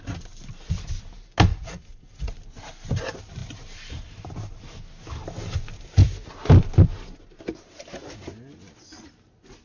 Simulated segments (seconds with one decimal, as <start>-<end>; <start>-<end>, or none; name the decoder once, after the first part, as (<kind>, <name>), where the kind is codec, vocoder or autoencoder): 1.5-2.3 (vocoder, Vocos)